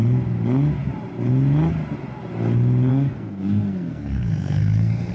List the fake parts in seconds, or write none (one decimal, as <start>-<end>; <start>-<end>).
2.9-5.1